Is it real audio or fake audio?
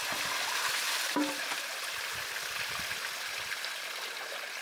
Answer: real